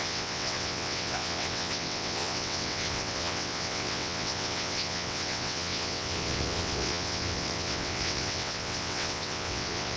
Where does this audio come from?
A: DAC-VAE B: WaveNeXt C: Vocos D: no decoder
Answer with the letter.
B